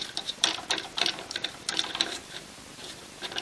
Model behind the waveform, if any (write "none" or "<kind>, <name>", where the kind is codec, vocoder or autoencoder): vocoder, BigVGAN v2